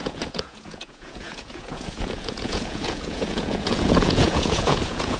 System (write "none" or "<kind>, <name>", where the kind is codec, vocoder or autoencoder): vocoder, Vocos